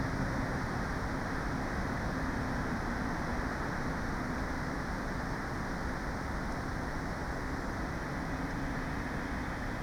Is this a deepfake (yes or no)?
no